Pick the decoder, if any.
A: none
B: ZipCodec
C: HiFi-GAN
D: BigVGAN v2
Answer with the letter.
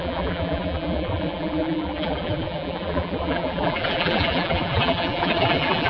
D